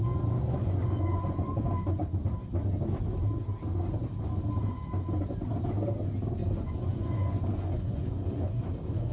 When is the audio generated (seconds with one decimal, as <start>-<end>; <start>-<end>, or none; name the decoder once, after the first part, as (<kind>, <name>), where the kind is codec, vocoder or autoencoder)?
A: 0.4-2.0 (vocoder, Vocos); 6.4-8.7